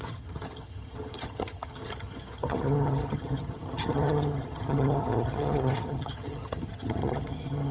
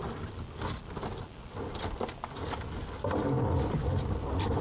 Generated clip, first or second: first